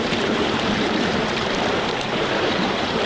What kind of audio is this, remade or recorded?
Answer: remade